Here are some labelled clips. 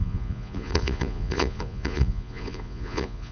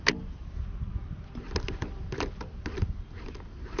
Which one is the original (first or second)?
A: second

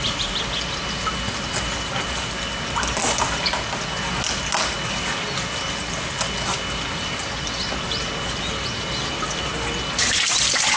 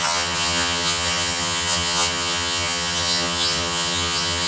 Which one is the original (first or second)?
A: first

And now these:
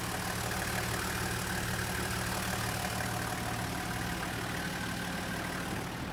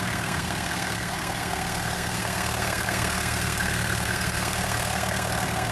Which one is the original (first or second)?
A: first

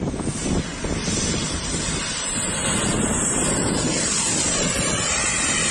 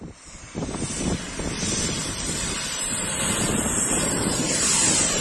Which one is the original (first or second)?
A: first